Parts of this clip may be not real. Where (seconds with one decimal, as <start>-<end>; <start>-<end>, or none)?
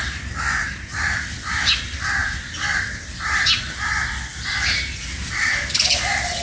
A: none